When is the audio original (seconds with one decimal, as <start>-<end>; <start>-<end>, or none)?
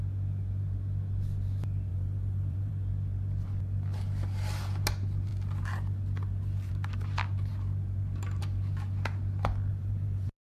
0.0-1.9; 2.7-9.7